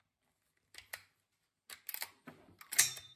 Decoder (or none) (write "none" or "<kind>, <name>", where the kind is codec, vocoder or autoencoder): none